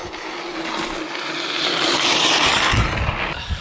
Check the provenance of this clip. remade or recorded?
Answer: recorded